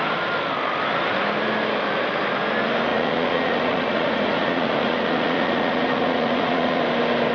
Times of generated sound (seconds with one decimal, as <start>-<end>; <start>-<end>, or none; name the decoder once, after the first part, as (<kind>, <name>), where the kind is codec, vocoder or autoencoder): 2.9-6.8 (vocoder, Vocos)